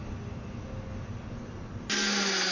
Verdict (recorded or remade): recorded